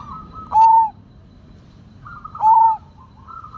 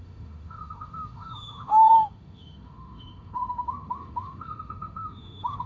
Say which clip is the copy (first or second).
second